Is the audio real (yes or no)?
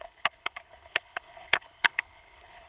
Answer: no